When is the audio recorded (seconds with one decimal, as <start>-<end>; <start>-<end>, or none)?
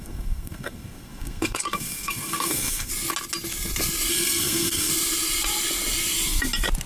2.9-4.1; 4.9-6.9